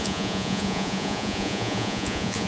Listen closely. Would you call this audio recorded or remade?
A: remade